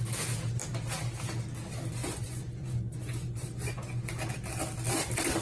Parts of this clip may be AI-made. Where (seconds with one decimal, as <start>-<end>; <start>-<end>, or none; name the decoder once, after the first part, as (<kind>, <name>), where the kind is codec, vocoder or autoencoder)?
2.0-4.1 (vocoder, Vocos)